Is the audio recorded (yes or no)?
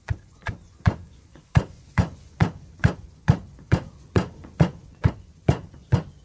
no